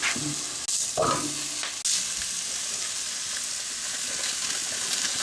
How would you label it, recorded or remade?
recorded